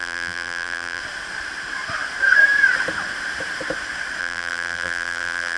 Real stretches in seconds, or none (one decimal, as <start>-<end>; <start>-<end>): 1.0-4.2